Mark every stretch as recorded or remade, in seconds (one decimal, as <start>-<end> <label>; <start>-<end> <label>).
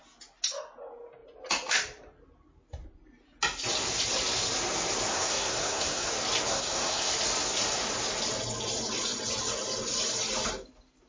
0.0-5.1 recorded; 5.1-6.1 remade; 6.1-6.5 recorded; 6.5-7.1 remade; 7.1-11.1 recorded